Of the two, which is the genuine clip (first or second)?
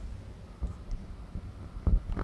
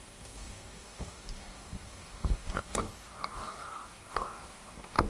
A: first